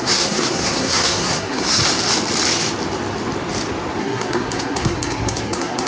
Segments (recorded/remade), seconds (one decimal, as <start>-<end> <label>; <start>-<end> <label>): 0.0-1.8 remade; 1.8-4.0 recorded; 4.0-5.9 remade